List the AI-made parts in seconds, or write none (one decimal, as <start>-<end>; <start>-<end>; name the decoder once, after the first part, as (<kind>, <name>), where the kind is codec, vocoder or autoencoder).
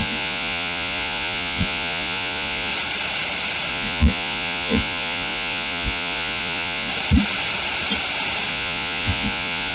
0.0-2.7 (vocoder, Vocos); 3.7-6.9; 8.5-9.7